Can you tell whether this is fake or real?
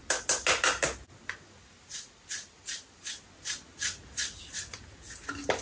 real